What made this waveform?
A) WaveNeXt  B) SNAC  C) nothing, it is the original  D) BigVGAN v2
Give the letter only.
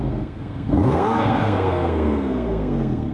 B